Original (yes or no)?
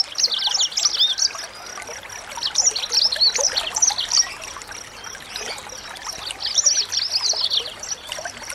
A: yes